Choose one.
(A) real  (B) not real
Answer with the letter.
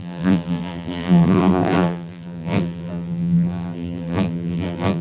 B